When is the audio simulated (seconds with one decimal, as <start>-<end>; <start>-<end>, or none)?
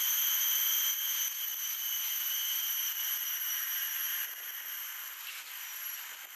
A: none